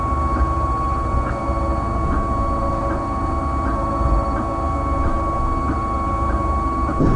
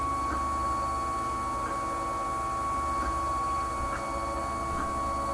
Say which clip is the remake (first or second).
first